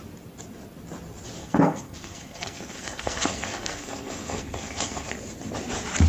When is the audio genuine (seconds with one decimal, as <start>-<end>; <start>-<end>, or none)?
0.0-1.4; 5.1-6.1